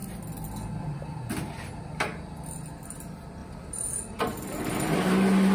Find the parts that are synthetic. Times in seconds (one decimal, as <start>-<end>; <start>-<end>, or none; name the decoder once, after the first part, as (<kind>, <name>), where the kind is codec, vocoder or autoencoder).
none